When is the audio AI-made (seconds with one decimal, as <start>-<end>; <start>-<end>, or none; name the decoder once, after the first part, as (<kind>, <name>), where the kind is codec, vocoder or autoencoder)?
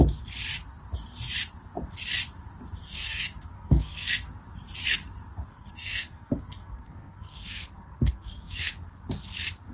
2.8-4.3 (codec, SNAC); 5.5-8.7